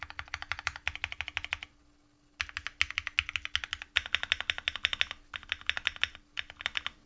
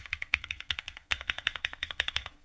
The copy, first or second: second